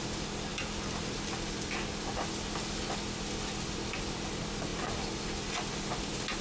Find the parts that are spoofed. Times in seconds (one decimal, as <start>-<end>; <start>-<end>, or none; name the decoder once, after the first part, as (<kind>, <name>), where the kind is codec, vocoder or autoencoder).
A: none